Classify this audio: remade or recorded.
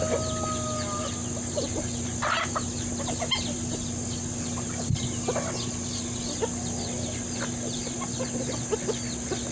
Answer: recorded